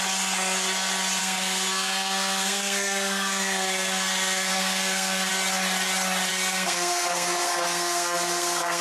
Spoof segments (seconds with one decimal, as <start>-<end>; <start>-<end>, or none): 1.2-5.3; 6.3-8.8